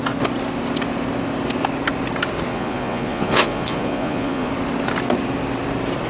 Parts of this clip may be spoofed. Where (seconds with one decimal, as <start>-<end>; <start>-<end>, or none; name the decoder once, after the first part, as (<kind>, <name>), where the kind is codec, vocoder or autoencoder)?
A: 2.5-4.5 (vocoder, Vocos)